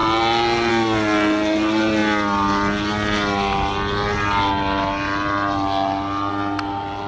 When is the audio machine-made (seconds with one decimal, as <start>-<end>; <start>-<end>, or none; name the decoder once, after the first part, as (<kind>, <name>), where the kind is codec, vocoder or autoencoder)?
none